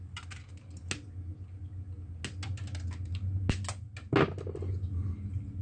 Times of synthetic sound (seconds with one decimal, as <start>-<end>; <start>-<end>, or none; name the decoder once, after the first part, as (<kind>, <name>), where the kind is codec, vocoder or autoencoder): none